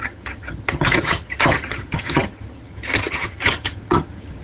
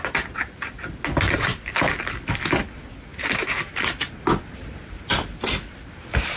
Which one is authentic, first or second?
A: second